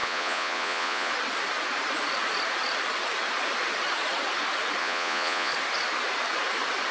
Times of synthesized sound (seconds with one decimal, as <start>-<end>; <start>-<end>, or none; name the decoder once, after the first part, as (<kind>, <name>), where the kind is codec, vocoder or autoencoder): 0.0-1.1 (vocoder, Vocos); 4.8-5.5